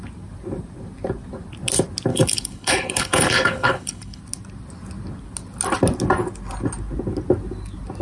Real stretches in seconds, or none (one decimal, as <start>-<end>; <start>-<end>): 0.0-2.1; 4.2-8.0